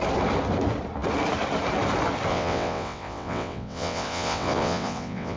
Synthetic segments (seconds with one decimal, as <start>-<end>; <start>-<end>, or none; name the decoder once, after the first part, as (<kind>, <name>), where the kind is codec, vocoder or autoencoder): 2.3-5.4 (vocoder, WaveNeXt)